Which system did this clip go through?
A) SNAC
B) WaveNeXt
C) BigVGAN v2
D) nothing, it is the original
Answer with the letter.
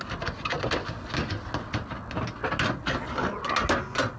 D